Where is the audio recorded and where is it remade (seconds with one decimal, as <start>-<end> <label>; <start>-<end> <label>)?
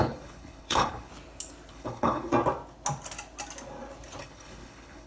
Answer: 0.0-1.1 remade; 1.1-1.7 recorded; 1.7-2.3 remade; 2.3-4.2 recorded; 4.2-5.1 remade